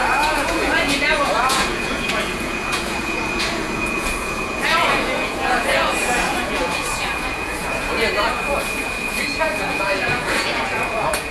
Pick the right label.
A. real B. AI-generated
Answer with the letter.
B